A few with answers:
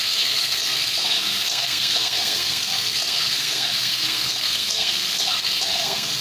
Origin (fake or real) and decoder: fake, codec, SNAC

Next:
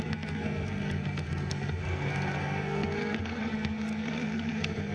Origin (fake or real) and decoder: fake, codec, SNAC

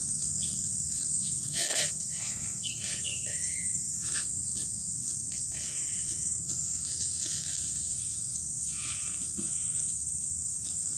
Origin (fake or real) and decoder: fake, codec, SNAC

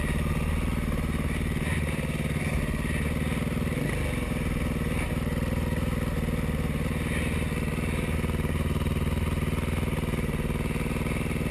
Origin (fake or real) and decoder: real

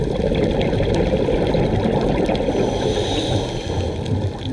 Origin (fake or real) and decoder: real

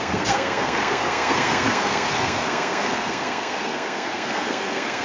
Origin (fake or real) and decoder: fake, codec, SNAC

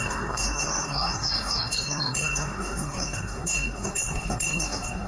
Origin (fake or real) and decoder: fake, codec, SNAC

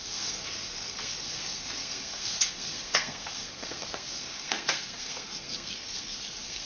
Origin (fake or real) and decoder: fake, codec, SNAC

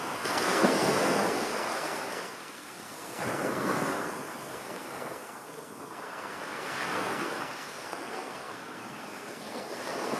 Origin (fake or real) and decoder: fake, codec, SNAC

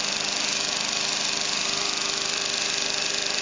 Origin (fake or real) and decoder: real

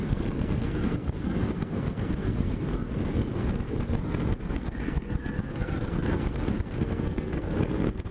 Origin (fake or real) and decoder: fake, codec, SNAC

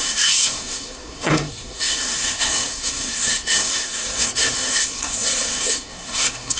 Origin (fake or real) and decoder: fake, codec, SNAC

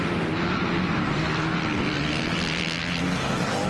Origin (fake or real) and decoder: real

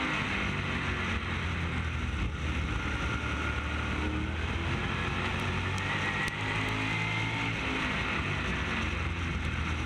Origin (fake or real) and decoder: real